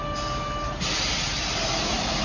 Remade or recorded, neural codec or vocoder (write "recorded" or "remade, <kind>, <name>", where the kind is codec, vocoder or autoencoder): recorded